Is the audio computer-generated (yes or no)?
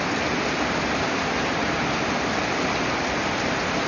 no